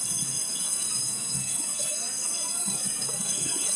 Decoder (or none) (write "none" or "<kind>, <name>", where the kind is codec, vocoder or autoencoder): codec, SNAC